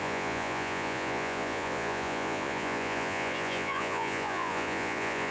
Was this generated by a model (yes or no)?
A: yes